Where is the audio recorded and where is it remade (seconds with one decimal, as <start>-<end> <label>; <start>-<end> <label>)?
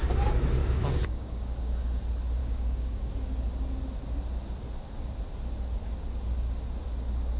0.0-0.6 recorded; 0.6-2.0 remade; 2.0-2.4 recorded; 2.4-3.1 remade; 3.1-7.4 recorded